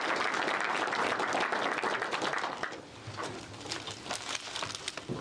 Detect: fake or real real